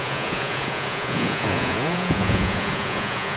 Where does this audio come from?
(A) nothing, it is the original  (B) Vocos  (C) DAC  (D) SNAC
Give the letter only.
B